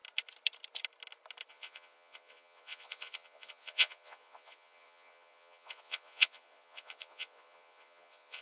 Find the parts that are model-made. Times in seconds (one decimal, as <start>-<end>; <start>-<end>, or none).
1.5-8.4